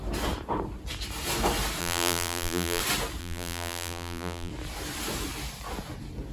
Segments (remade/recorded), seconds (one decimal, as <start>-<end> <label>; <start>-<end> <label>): 0.0-1.8 recorded; 1.8-2.8 remade; 2.8-3.2 recorded; 3.2-4.5 remade; 4.5-6.3 recorded